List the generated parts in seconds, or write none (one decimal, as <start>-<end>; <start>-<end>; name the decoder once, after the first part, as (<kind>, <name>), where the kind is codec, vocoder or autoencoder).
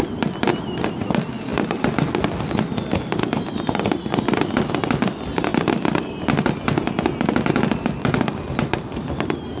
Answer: none